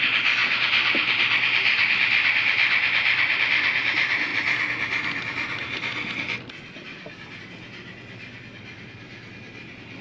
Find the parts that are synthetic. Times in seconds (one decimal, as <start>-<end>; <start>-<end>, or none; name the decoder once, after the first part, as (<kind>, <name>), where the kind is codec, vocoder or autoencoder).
none